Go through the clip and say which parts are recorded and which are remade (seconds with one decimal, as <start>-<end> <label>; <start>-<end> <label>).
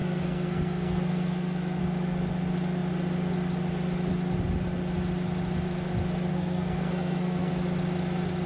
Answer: 0.0-1.8 remade; 1.8-6.3 recorded; 6.3-7.5 remade; 7.5-8.5 recorded